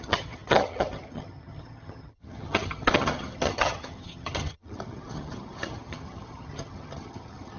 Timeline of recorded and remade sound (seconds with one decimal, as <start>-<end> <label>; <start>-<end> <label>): 0.0-7.6 remade